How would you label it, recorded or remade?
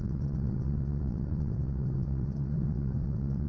remade